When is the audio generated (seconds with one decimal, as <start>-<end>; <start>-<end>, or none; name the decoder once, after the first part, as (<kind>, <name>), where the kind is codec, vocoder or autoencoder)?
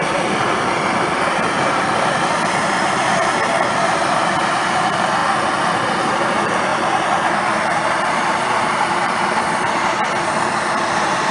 0.0-5.2 (vocoder, BigVGAN v2); 6.1-11.3